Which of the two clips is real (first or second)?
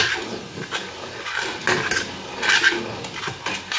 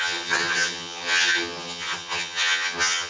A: first